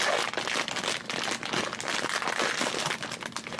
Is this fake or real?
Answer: real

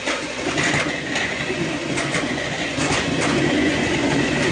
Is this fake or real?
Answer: fake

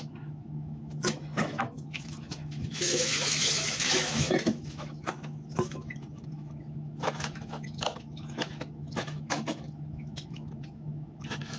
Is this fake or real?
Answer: fake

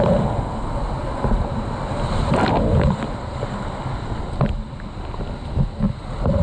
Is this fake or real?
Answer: real